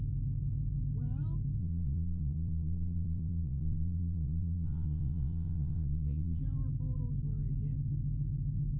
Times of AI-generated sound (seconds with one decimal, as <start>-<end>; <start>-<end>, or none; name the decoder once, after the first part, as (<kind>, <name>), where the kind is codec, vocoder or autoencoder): 1.6-6.4 (vocoder, Vocos)